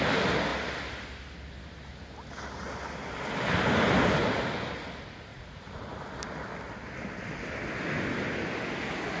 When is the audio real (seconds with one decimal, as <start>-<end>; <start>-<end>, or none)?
0.0-5.3; 5.8-9.2